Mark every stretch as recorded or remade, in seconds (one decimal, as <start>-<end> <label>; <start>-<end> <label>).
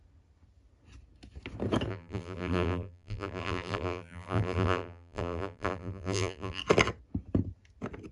0.0-1.9 recorded; 1.9-6.6 remade; 6.6-8.1 recorded